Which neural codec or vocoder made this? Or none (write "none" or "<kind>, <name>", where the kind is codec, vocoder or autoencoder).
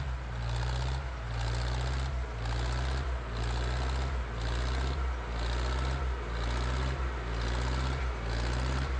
none